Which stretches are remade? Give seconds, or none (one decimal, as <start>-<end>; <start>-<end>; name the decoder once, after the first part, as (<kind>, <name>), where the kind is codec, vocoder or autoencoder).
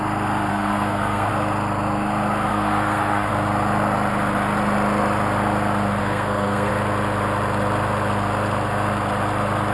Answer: 0.5-1.3 (codec, SNAC); 2.5-3.3; 6.0-6.7